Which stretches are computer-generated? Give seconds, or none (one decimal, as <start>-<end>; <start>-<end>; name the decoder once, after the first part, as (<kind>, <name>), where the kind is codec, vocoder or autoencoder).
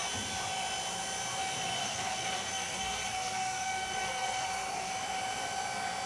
1.8-4.9 (codec, SNAC)